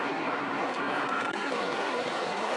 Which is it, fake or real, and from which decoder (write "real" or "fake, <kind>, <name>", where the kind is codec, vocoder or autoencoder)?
fake, codec, SNAC